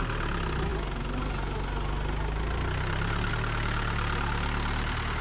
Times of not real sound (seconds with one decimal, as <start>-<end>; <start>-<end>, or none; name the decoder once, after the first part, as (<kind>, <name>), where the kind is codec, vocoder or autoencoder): none